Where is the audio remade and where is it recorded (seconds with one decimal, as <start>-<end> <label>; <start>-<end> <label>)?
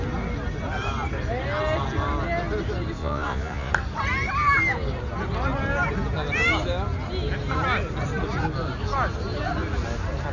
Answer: 0.0-3.0 recorded; 3.0-3.7 remade; 3.7-10.3 recorded